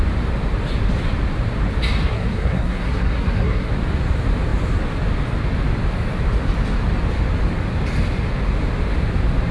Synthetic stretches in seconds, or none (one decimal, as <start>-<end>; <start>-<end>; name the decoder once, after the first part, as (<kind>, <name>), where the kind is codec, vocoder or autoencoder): 2.0-3.7 (codec, SNAC)